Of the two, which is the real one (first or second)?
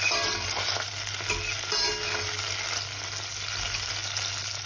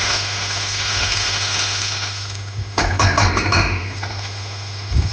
first